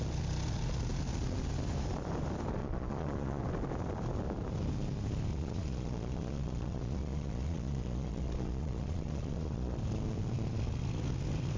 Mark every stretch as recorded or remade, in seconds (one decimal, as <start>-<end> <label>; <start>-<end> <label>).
0.0-2.6 recorded; 2.6-3.4 remade; 3.4-5.3 recorded; 5.3-9.8 remade; 9.8-11.6 recorded

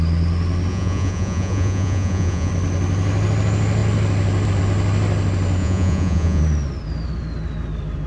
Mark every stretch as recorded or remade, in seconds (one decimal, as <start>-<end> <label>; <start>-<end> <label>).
0.0-0.7 recorded; 0.7-2.5 remade; 2.5-5.6 recorded; 5.6-6.4 remade; 6.4-8.1 recorded

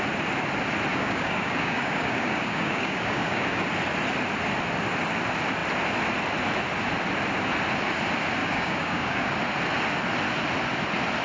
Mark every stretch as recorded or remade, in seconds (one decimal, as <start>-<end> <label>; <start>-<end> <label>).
0.0-0.9 recorded; 0.9-3.6 remade; 3.6-8.4 recorded; 8.4-9.3 remade; 9.3-11.2 recorded

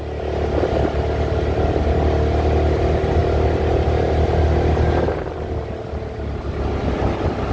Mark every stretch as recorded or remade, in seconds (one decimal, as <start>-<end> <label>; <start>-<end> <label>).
0.0-7.5 recorded

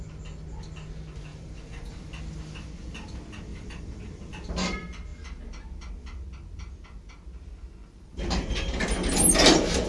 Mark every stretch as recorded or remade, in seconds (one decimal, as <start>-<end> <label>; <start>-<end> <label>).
0.0-1.3 recorded; 1.3-2.0 remade; 2.0-3.5 recorded; 3.5-4.3 remade; 4.3-7.8 recorded; 7.8-8.8 remade; 8.8-9.9 recorded

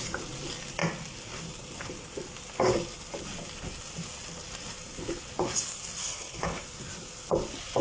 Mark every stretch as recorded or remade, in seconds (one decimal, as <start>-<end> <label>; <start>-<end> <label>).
0.0-6.0 recorded; 6.0-6.6 remade; 6.6-7.8 recorded